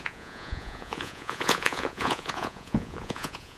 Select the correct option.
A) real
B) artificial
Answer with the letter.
B